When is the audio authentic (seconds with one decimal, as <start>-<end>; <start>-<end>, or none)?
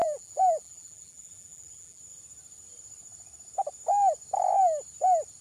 2.0-5.4